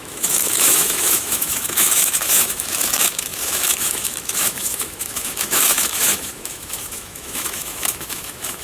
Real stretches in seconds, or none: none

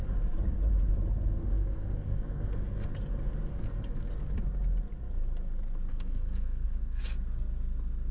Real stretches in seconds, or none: 0.0-1.4; 2.9-3.5; 4.1-5.9; 7.0-8.1

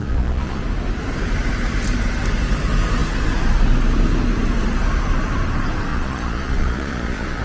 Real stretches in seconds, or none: 0.6-5.9

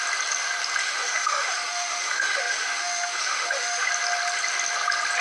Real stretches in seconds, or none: 0.0-0.8; 3.9-5.2

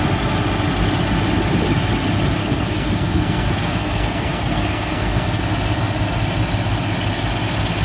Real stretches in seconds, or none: 0.0-2.4; 5.4-7.8

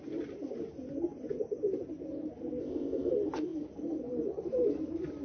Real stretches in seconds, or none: 0.0-2.6; 3.1-5.2

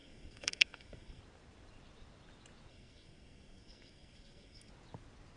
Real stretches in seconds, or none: 1.2-2.7; 4.7-5.4